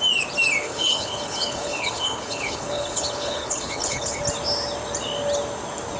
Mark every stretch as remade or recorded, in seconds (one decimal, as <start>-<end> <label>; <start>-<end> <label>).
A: 0.0-0.6 recorded; 0.6-4.2 remade; 4.2-6.0 recorded